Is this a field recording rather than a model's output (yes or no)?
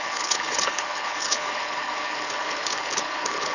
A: no